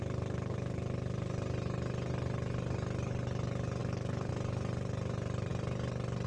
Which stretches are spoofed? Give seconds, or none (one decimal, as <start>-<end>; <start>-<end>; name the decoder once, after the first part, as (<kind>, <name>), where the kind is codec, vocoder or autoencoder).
3.8-4.3 (codec, DAC)